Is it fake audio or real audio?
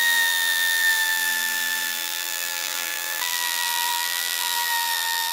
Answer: fake